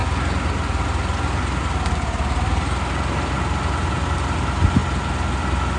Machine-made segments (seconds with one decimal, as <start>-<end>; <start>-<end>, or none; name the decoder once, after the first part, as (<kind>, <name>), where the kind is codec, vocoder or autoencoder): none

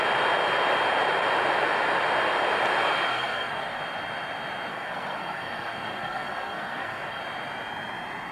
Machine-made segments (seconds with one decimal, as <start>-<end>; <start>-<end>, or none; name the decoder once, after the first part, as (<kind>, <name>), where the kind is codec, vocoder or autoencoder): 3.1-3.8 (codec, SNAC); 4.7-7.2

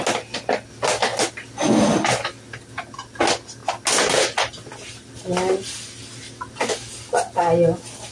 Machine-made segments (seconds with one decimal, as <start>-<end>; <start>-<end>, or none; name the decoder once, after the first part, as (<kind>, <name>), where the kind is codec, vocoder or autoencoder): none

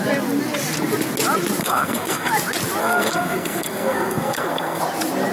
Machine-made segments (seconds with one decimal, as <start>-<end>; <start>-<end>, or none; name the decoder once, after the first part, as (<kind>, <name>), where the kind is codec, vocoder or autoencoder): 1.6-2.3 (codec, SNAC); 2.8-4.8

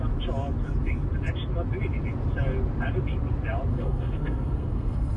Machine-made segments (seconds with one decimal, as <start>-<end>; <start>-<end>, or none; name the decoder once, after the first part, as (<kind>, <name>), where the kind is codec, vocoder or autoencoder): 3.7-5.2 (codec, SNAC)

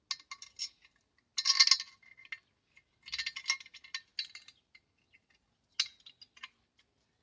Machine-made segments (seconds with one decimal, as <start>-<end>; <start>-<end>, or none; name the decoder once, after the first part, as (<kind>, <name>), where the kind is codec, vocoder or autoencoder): none

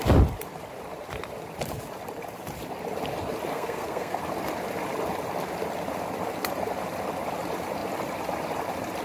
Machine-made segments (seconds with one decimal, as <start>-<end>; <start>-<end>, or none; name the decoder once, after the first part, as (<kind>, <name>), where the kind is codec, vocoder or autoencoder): 3.5-4.2 (codec, SNAC)